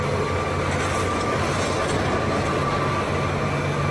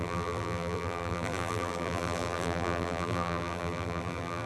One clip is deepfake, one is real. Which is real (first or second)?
first